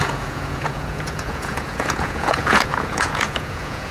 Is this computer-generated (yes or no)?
yes